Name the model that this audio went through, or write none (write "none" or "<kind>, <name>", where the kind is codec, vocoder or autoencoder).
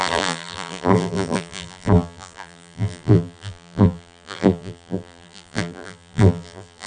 vocoder, BigVGAN v2